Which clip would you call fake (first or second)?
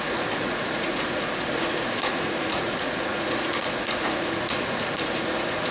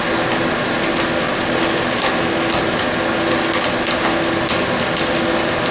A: first